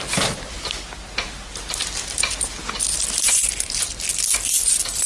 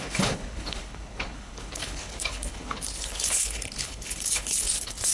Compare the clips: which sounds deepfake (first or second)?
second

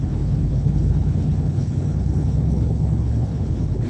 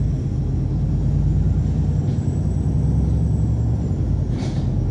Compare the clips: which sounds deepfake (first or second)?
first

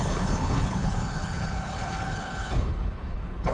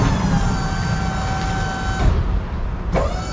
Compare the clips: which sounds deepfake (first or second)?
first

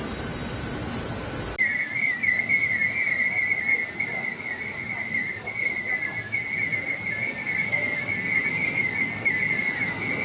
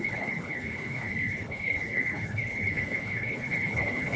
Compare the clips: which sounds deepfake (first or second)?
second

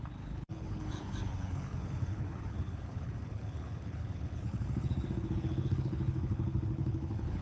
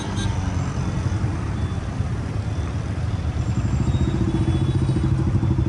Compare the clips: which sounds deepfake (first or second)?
first